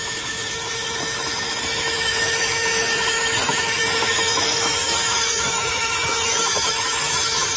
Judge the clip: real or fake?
fake